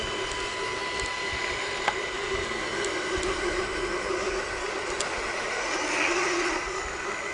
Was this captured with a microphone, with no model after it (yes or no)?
yes